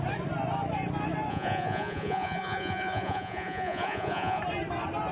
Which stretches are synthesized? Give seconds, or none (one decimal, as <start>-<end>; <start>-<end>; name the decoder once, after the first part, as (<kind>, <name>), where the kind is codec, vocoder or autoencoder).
1.3-4.4 (vocoder, Vocos)